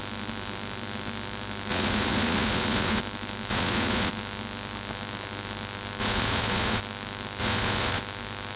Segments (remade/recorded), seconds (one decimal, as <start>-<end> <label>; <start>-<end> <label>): 0.0-1.7 recorded; 1.7-3.0 remade; 3.0-3.5 recorded; 3.5-4.1 remade; 4.1-6.0 recorded; 6.0-6.8 remade; 6.8-7.4 recorded; 7.4-8.0 remade; 8.0-8.6 recorded